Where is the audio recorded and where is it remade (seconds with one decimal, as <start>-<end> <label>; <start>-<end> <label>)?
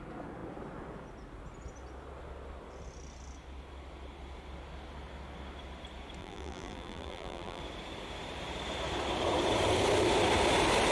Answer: 0.0-6.2 recorded; 6.2-7.6 remade; 7.6-10.9 recorded